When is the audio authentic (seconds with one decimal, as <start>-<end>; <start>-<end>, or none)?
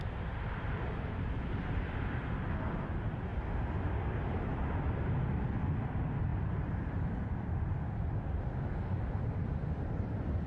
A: 3.3-4.5